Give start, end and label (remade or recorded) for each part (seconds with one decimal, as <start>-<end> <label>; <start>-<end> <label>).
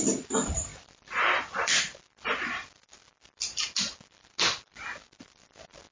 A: 0.0-5.9 recorded